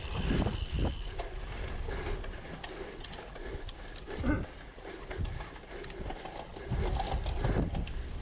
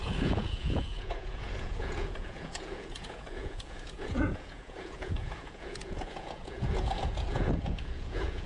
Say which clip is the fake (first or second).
second